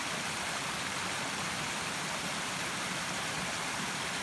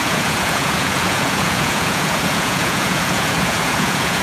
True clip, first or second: first